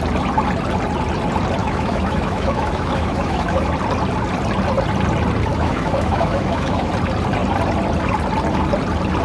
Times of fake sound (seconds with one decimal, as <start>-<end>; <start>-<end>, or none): 1.6-3.7; 5.5-6.9